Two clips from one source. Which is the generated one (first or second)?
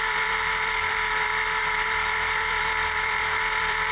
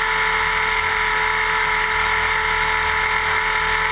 first